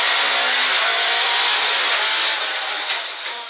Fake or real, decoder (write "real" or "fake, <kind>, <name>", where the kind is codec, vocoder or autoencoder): real